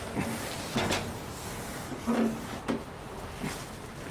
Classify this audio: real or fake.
real